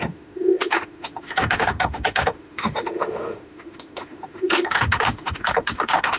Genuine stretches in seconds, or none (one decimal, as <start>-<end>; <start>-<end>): none